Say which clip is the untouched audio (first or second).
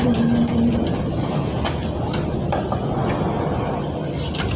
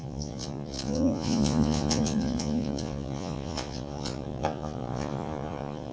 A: first